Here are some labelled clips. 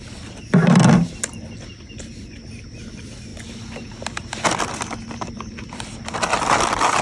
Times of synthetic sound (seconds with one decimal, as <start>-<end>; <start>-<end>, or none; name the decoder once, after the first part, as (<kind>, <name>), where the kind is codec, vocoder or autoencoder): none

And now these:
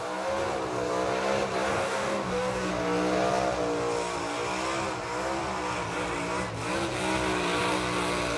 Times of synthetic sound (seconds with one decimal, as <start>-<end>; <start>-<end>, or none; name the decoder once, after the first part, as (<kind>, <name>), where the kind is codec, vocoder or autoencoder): 1.7-2.7 (codec, DAC)

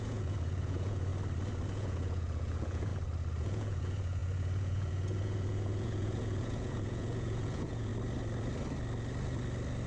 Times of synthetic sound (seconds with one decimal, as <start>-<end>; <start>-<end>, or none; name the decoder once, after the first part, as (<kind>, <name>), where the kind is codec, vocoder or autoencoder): 0.0-1.1 (vocoder, Vocos); 1.7-2.9; 3.4-7.9

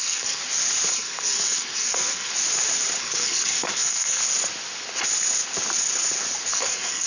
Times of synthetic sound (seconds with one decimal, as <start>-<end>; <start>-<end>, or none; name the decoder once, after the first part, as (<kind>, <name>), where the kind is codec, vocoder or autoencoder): 0.0-0.4 (codec, SNAC); 0.9-2.3; 3.0-4.2; 6.5-7.1